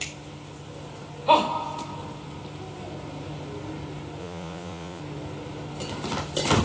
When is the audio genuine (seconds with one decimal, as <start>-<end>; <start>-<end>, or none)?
0.0-4.2; 5.0-6.6